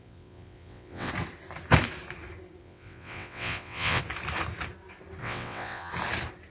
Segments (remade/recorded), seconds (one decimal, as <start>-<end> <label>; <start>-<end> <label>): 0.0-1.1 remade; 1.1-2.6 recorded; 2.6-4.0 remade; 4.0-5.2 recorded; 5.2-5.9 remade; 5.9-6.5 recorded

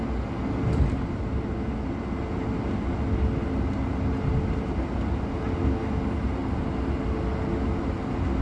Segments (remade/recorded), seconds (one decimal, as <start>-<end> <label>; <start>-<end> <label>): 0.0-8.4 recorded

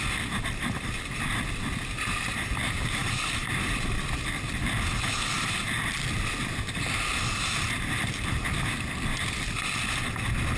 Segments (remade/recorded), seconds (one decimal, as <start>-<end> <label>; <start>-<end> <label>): 0.0-10.6 recorded

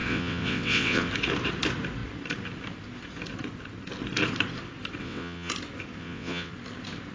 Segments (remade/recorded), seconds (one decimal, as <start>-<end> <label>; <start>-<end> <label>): 0.0-1.1 remade; 1.1-5.0 recorded; 5.0-5.5 remade; 5.5-6.0 recorded; 6.0-6.5 remade; 6.5-7.1 recorded

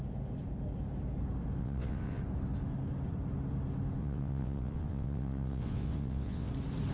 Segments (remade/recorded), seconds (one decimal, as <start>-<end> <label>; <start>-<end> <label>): 0.0-1.6 recorded; 1.6-2.2 remade; 2.2-4.0 recorded; 4.0-6.5 remade; 6.5-6.9 recorded

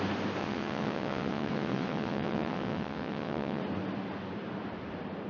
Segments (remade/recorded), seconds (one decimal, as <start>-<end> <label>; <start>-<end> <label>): 0.0-0.4 recorded; 0.4-3.6 remade; 3.6-5.3 recorded